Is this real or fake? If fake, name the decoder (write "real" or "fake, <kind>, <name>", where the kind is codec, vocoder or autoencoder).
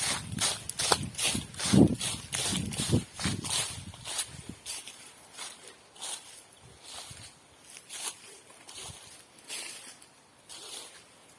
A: real